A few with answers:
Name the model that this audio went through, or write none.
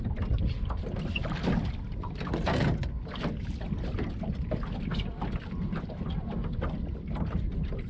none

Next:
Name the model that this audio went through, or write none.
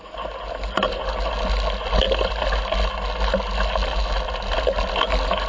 none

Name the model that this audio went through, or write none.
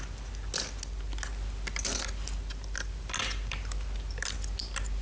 none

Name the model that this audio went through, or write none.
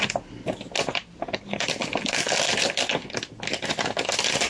none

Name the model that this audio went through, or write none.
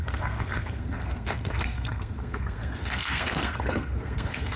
codec, SNAC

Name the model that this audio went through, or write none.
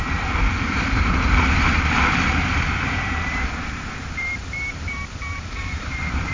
vocoder, BigVGAN v2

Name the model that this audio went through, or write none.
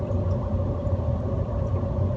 none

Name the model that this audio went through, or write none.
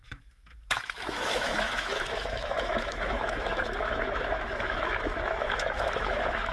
autoencoder, DAC-VAE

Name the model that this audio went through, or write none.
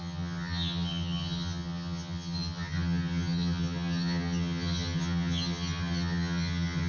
vocoder, HiFi-GAN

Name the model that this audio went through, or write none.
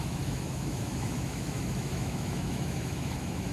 autoencoder, DAC-VAE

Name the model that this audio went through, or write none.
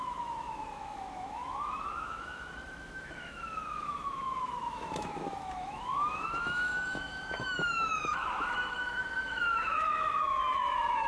autoencoder, DAC-VAE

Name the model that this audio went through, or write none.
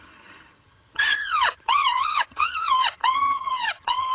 vocoder, HiFi-GAN